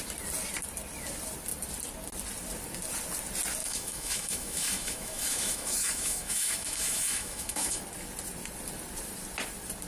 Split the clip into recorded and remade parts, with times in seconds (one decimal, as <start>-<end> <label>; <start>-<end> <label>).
0.0-3.6 recorded; 3.6-7.8 remade; 7.8-9.9 recorded